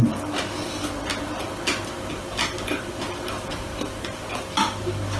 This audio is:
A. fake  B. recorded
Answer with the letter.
B